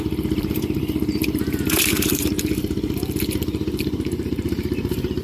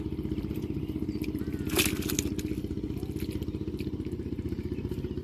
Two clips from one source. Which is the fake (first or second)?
first